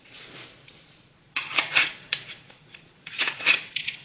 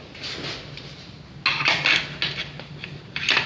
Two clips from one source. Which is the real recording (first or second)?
second